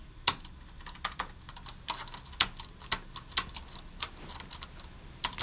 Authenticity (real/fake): real